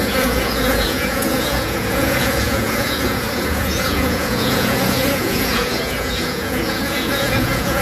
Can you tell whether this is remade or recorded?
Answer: remade